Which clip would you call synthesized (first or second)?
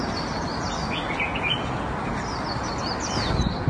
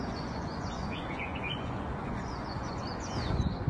second